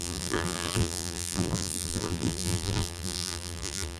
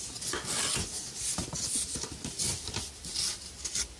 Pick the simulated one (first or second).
first